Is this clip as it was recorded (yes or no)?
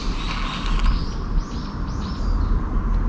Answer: yes